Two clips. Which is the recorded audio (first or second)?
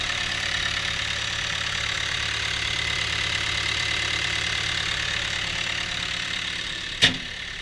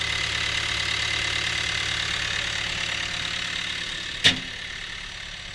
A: second